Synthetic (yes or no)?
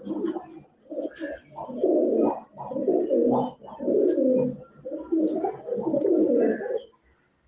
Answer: no